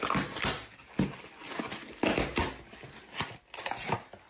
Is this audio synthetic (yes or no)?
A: no